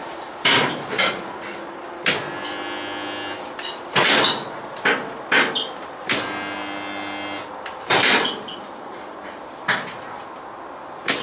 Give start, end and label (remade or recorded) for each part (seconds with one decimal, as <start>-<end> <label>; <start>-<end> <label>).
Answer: 0.0-11.2 recorded